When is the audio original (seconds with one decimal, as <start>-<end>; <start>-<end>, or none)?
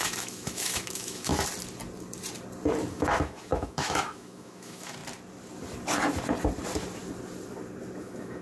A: 1.3-2.9; 5.0-8.0